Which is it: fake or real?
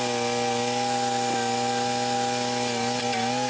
real